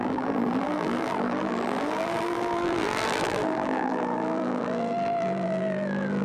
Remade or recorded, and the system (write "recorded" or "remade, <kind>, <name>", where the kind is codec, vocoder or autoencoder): remade, vocoder, BigVGAN v2